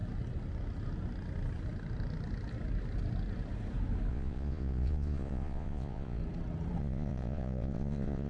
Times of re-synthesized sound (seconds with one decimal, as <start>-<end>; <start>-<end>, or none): 4.1-6.2; 6.8-8.3